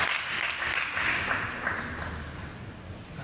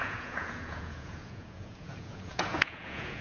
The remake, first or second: second